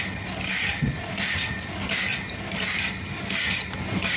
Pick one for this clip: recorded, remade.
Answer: recorded